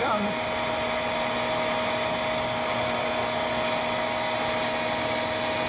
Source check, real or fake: real